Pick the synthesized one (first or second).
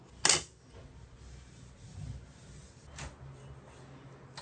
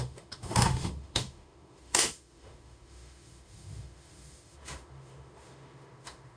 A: second